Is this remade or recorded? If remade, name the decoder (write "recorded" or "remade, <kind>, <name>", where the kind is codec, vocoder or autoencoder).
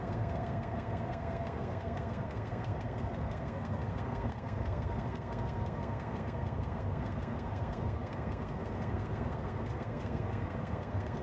remade, codec, SNAC